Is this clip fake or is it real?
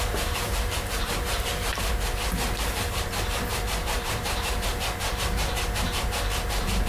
fake